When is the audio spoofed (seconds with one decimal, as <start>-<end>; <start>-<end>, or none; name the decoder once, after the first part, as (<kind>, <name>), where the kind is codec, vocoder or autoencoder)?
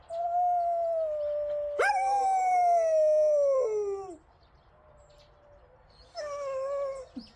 none